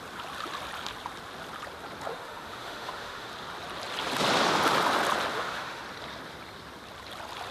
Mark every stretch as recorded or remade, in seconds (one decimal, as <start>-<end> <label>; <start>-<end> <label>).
0.0-2.1 recorded; 2.1-3.3 remade; 3.3-5.3 recorded; 5.3-5.8 remade; 5.8-7.5 recorded